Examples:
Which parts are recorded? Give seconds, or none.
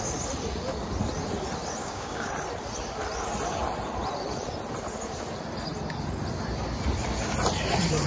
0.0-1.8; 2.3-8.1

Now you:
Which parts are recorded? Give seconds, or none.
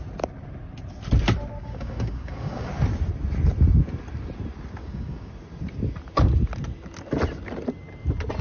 0.0-1.6; 2.7-4.8; 5.3-8.4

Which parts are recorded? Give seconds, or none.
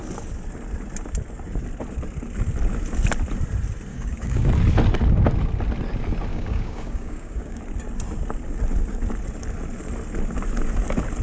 0.0-3.9; 4.5-6.3; 7.6-11.2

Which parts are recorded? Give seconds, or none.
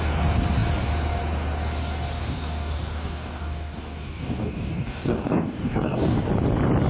0.0-2.2; 6.3-6.9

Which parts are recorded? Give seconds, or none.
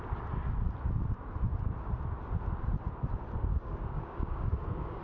0.0-3.5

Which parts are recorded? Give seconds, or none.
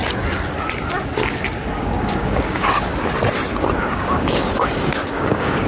0.0-1.7; 2.9-3.8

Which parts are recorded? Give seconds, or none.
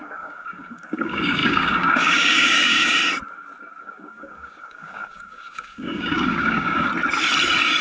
3.0-3.8; 6.9-7.8